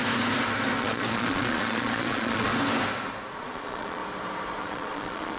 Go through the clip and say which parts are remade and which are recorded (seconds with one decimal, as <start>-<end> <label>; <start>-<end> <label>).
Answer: 0.0-0.8 recorded; 0.8-2.5 remade; 2.5-3.4 recorded; 3.4-4.0 remade; 4.0-4.6 recorded; 4.6-5.4 remade